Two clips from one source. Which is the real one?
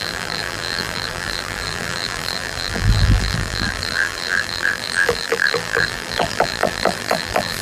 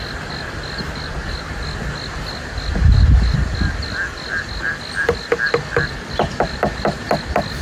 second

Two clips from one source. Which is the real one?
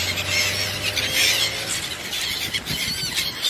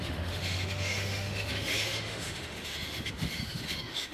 first